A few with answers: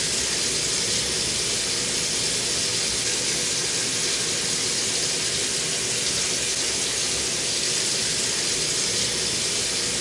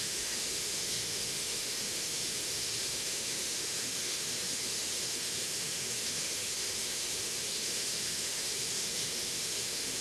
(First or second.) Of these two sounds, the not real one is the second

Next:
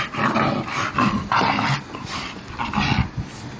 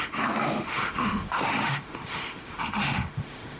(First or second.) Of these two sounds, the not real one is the second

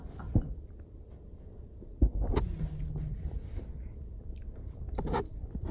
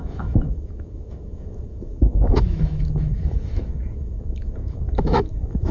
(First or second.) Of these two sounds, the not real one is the second